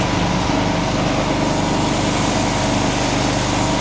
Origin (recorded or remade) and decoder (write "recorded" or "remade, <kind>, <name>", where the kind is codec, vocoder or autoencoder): recorded